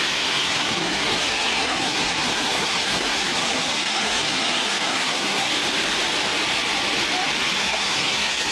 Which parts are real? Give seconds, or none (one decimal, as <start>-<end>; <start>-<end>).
5.5-7.6